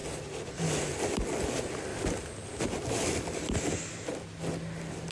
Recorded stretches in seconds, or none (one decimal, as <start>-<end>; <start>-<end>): 0.0-5.1